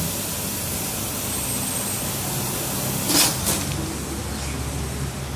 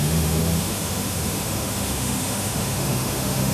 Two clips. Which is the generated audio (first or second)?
second